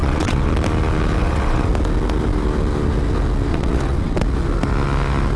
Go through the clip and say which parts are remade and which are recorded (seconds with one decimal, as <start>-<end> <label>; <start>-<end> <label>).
0.0-0.5 remade; 0.5-1.2 recorded; 1.2-1.7 remade; 1.7-3.5 recorded; 3.5-4.2 remade; 4.2-5.4 recorded